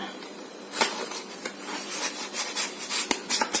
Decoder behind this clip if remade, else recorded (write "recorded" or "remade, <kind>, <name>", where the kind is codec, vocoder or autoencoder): remade, vocoder, BigVGAN v2